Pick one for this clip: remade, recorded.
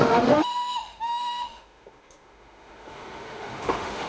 remade